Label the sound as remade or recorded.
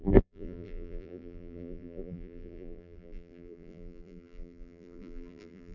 remade